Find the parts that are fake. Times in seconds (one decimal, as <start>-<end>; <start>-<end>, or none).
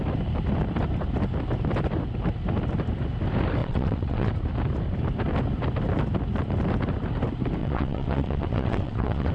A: 3.6-4.3; 7.6-9.3